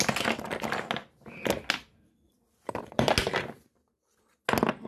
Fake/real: real